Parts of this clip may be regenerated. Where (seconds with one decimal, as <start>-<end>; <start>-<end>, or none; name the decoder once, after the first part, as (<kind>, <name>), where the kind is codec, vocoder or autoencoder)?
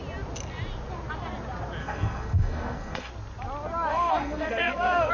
1.8-3.1 (codec, SNAC); 3.9-5.1